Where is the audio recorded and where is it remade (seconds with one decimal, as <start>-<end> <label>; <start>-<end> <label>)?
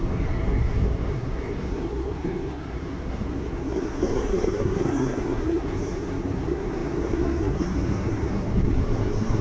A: 0.0-9.4 remade